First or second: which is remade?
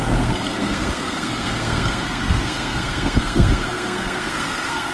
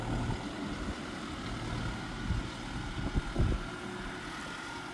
first